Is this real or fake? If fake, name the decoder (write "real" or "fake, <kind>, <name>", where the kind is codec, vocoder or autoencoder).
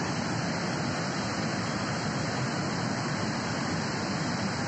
real